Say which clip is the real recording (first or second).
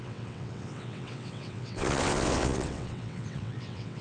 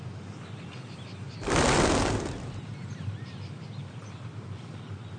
second